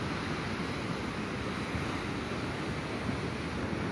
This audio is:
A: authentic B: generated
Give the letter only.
A